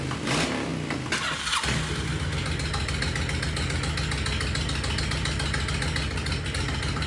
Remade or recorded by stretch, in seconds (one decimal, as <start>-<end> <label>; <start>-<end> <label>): 0.0-7.1 recorded

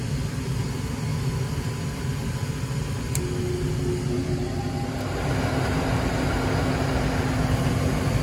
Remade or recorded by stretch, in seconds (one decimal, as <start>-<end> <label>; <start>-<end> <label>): 0.0-8.2 recorded

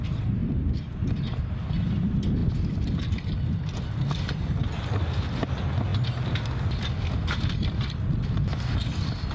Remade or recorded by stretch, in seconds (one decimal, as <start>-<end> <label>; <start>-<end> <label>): 0.0-9.3 recorded

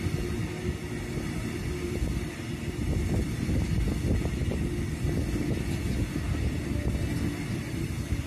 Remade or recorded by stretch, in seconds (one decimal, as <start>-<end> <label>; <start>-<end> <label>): 0.0-8.3 recorded

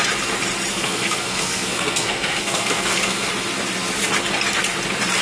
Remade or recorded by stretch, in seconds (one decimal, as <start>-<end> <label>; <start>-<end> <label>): 0.0-0.7 recorded; 0.7-3.3 remade; 3.3-5.2 recorded

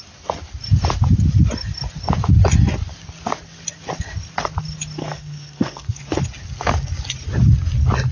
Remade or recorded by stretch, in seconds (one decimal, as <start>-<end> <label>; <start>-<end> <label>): 0.0-5.0 recorded; 5.0-6.0 remade; 6.0-8.1 recorded

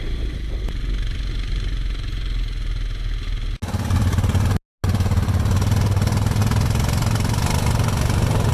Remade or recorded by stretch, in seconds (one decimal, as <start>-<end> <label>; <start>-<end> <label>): 0.0-8.5 recorded